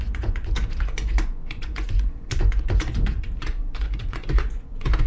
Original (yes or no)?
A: no